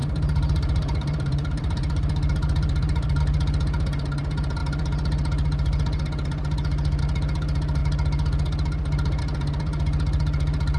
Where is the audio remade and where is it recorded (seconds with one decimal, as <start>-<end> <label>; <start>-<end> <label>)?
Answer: 0.0-3.2 remade; 3.2-10.8 recorded